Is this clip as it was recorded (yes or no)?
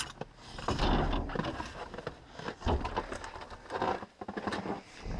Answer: yes